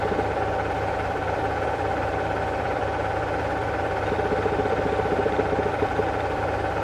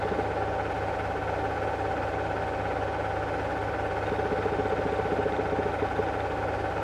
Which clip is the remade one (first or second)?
first